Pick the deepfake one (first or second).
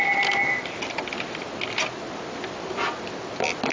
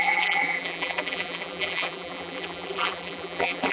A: second